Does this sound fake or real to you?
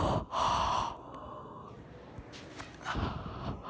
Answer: real